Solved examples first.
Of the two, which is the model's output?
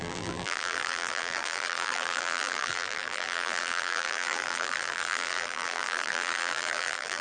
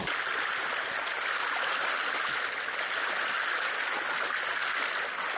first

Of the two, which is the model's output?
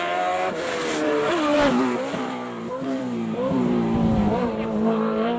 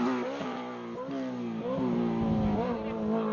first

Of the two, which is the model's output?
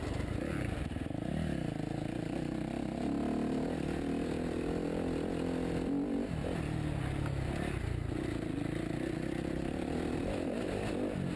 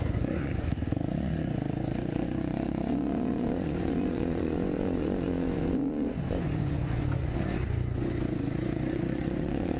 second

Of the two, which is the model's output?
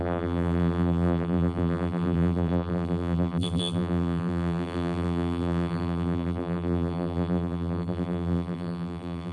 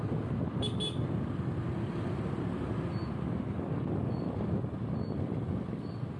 first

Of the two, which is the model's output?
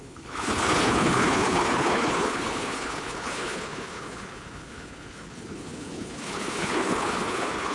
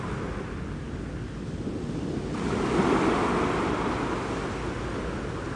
first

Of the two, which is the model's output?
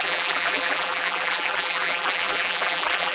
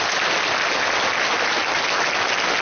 first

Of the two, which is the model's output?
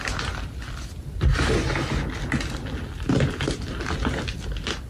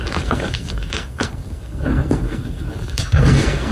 second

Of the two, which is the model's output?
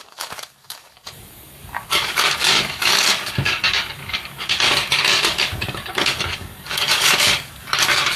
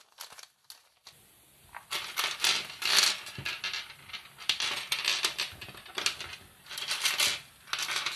first